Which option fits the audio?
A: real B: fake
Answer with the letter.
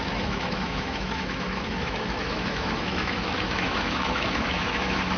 B